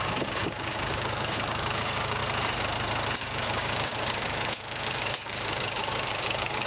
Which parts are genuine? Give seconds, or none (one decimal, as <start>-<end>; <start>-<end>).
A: 2.2-3.2